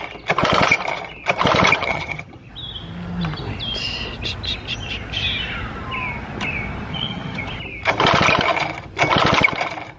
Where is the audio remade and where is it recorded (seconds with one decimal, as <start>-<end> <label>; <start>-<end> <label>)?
0.0-1.8 recorded; 1.8-2.5 remade; 2.5-6.9 recorded; 6.9-7.4 remade; 7.4-10.0 recorded